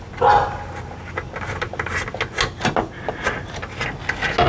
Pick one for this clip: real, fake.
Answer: real